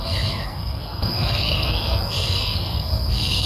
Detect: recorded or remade remade